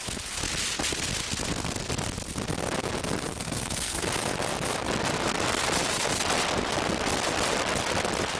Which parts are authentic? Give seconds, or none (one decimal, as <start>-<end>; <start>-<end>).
0.0-3.3; 4.0-8.4